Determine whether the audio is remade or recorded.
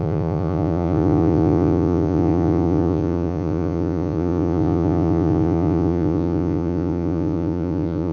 remade